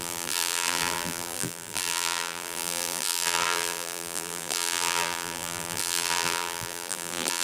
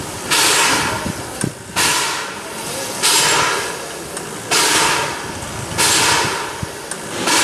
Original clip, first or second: second